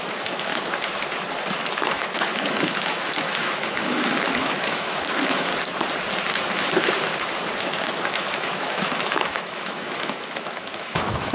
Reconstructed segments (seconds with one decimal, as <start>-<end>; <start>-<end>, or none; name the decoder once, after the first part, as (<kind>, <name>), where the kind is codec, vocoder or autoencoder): 0.0-0.5 (autoencoder, DAC-VAE); 1.6-5.5; 7.6-11.3